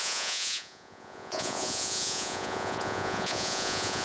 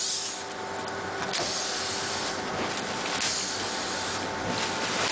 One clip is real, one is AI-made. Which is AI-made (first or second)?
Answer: first